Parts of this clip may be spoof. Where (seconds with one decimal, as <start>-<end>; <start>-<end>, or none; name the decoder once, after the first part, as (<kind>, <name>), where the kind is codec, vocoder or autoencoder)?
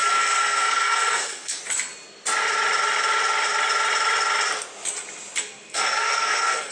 0.0-1.6 (codec, SNAC); 5.4-6.7